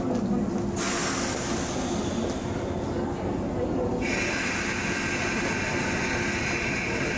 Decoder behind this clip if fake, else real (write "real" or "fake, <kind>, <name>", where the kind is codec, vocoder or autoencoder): real